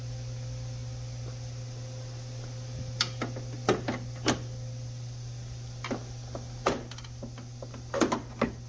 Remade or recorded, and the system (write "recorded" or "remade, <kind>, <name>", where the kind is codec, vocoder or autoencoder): recorded